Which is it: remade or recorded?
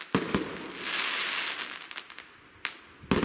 recorded